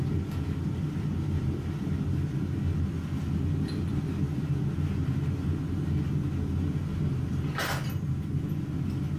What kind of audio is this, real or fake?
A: real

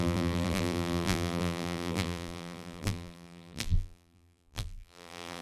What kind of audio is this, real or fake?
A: fake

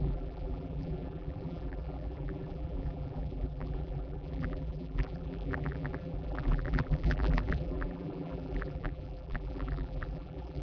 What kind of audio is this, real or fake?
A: fake